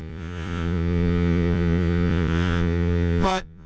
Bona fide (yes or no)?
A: no